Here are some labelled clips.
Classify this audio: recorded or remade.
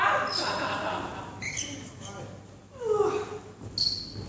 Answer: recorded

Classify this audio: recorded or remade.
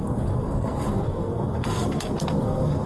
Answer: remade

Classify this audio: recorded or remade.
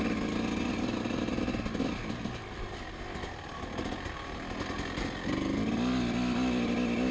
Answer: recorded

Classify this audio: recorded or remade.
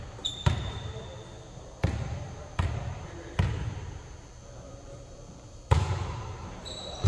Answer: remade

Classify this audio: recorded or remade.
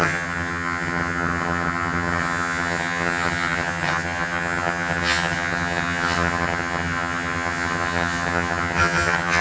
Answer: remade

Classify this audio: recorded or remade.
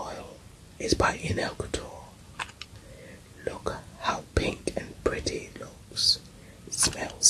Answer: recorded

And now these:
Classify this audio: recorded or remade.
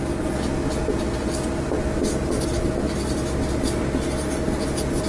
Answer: recorded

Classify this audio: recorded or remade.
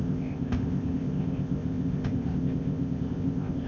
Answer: remade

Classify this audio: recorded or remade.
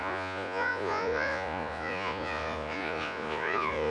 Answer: remade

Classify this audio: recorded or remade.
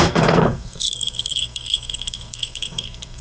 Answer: remade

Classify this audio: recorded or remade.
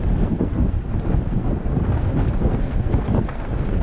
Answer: remade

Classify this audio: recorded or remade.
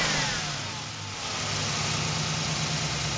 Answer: recorded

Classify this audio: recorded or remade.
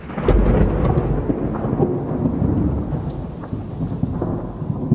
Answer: recorded